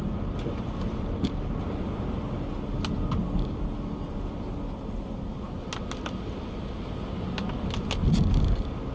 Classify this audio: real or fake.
real